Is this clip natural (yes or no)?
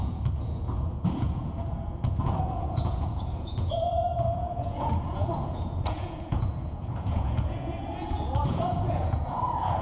no